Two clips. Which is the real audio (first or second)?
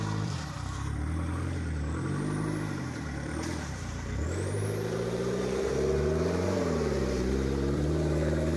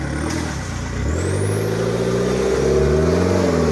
second